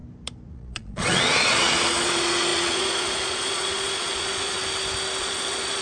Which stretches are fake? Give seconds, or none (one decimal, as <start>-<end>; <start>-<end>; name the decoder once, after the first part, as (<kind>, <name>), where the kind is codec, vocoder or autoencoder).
0.5-4.6 (vocoder, Vocos); 5.2-5.8